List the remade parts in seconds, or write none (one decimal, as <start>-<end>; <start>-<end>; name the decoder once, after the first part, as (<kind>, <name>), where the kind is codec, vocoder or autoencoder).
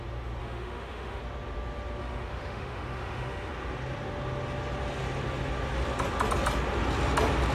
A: 0.4-1.2 (autoencoder, DAC-VAE); 2.0-3.5